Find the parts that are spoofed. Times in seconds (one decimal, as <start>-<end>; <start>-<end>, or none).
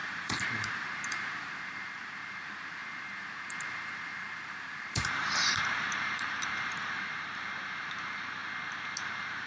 0.0-8.4; 9.0-9.5